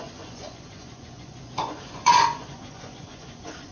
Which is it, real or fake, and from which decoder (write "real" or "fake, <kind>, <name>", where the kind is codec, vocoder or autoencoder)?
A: fake, vocoder, Vocos